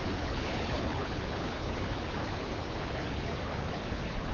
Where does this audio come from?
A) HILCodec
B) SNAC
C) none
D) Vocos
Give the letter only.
A